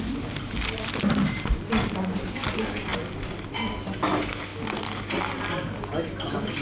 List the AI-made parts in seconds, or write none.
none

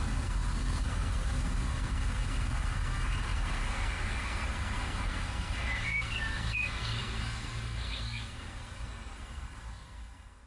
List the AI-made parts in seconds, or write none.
0.0-10.5 (codec, SNAC)

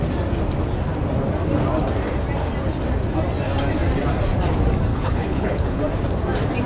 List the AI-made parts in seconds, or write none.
4.9-5.8 (codec, HILCodec)

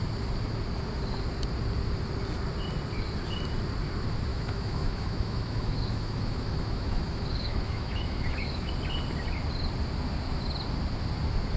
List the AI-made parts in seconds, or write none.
4.3-8.7 (autoencoder, DAC-VAE)

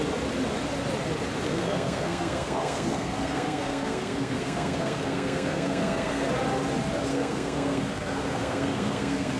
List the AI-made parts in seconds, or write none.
1.5-6.3 (codec, SNAC); 7.1-9.4

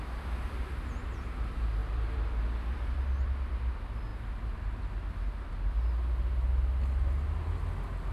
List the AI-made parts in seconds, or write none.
1.8-2.8 (vocoder, BigVGAN v2)

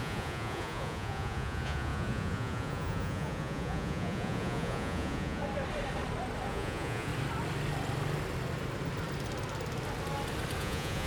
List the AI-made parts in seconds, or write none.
0.0-5.4 (vocoder, Vocos); 6.5-7.1; 10.6-11.1